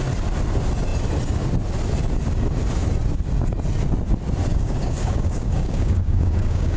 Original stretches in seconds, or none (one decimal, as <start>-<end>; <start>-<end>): 0.0-4.5